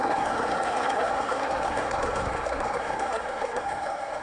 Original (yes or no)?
no